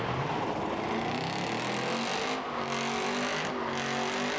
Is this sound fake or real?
real